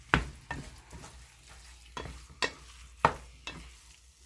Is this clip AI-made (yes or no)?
no